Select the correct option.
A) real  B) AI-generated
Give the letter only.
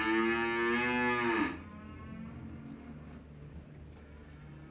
A